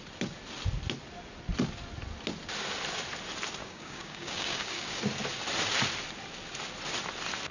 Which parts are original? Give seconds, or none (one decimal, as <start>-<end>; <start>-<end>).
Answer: 0.0-3.6; 5.0-7.5